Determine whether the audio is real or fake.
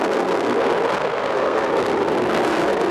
fake